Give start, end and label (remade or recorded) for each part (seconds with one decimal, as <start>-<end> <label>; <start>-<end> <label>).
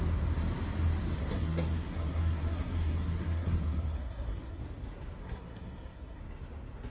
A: 0.0-1.2 recorded; 1.2-4.6 remade; 4.6-5.2 recorded; 5.2-6.2 remade; 6.2-6.9 recorded